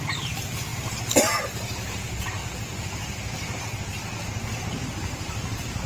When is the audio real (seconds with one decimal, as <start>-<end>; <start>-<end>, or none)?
0.7-1.4; 2.4-4.7